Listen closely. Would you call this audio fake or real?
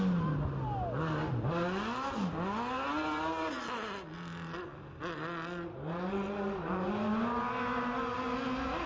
real